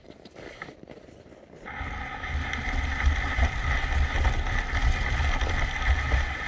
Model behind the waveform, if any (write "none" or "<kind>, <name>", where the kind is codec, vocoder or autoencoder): none